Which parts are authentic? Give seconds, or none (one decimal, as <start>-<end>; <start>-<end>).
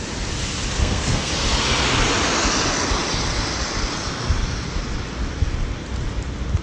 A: 0.0-0.8; 1.3-6.6